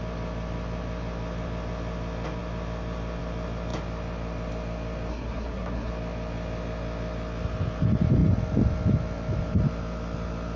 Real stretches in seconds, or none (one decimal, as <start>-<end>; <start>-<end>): 0.0-5.1; 5.9-10.6